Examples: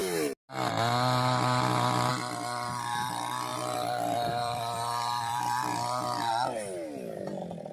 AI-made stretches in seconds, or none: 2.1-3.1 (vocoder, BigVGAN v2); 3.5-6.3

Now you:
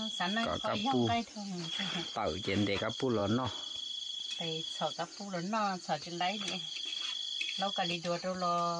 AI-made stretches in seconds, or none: none

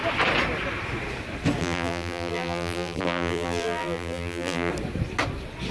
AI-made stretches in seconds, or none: 1.6-4.7 (vocoder, BigVGAN v2)

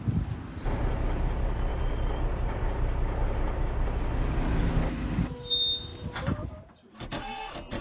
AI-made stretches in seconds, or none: 1.7-4.0 (vocoder, BigVGAN v2); 5.9-7.8

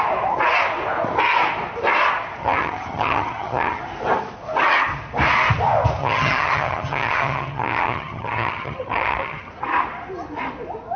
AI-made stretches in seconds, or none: 2.4-3.8 (vocoder, HiFi-GAN); 6.0-9.5

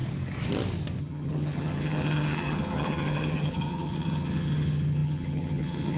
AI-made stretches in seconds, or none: 1.0-6.0 (vocoder, HiFi-GAN)

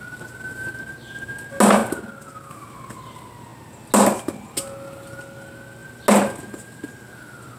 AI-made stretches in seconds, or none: none